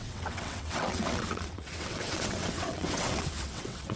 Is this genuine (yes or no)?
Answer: no